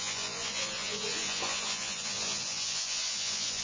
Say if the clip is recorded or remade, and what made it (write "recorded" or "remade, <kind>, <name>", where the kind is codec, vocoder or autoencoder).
remade, vocoder, Vocos